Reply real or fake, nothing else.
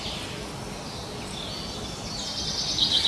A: real